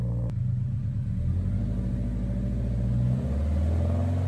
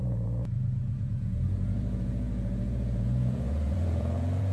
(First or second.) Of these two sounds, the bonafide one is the first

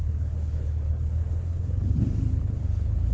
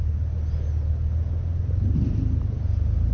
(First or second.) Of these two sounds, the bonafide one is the second